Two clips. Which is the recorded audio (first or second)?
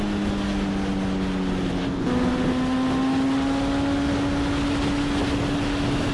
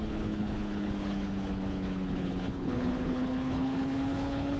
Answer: first